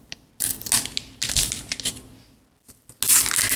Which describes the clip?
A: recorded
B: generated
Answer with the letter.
A